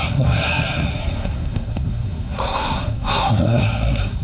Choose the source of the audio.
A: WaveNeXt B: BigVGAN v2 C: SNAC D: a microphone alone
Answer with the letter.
C